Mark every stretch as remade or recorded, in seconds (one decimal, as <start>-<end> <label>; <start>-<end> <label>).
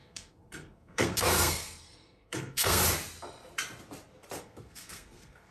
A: 0.0-2.8 remade; 2.8-4.4 recorded; 4.4-5.5 remade